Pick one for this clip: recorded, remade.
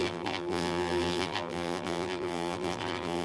remade